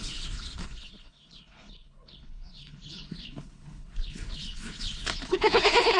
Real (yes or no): no